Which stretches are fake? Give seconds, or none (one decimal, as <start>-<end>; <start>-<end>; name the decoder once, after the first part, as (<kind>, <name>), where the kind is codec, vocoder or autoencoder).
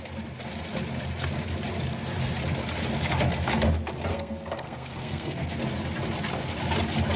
4.1-5.6 (codec, SNAC)